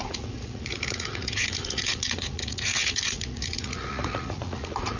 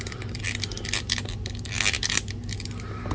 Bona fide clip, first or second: second